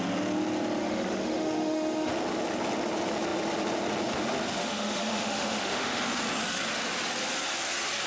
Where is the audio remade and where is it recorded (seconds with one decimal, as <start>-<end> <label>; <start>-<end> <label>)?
0.0-0.8 recorded; 0.8-2.1 remade; 2.1-4.6 recorded; 4.6-6.0 remade; 6.0-8.1 recorded